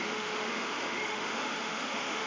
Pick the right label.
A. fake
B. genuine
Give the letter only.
A